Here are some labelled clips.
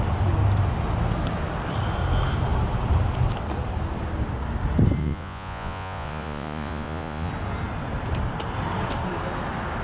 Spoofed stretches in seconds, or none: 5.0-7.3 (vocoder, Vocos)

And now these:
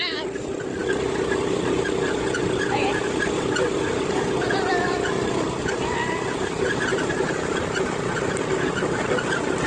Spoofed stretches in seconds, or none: none